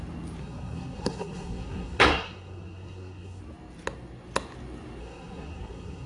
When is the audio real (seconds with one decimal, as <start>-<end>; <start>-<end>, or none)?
0.0-0.4; 3.4-5.0